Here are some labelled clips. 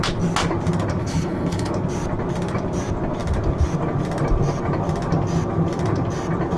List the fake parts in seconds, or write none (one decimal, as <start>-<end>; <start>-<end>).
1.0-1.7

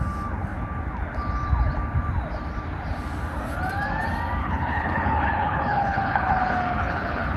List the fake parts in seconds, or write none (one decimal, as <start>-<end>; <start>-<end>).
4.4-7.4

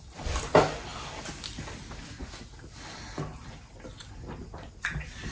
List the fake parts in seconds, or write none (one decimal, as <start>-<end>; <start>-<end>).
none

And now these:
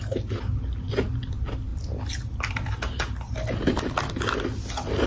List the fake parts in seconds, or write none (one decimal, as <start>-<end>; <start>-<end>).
none

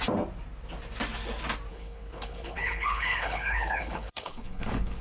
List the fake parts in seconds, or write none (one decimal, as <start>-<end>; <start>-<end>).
1.7-5.0